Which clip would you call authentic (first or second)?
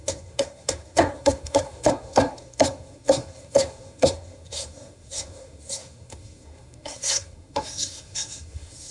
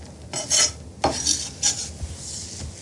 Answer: second